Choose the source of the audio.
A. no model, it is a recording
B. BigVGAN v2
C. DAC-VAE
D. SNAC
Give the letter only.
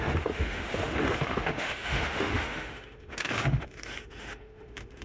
C